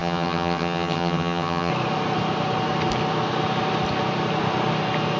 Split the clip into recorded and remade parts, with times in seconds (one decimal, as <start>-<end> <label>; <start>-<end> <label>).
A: 0.0-1.7 remade; 1.7-5.2 recorded